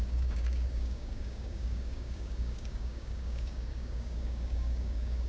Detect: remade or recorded remade